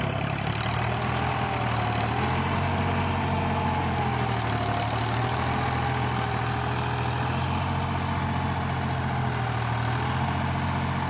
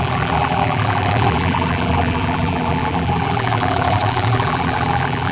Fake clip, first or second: second